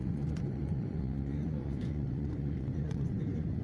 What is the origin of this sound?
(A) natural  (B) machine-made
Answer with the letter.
B